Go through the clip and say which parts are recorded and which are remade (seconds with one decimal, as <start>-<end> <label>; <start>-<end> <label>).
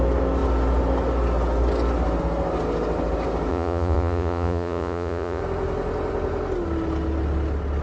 0.0-3.5 recorded; 3.5-5.4 remade; 5.4-7.8 recorded